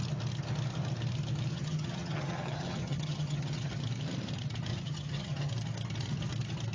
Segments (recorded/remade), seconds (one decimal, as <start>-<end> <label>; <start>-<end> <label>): 0.0-1.5 recorded; 1.5-3.7 remade; 3.7-4.7 recorded; 4.7-5.5 remade; 5.5-6.7 recorded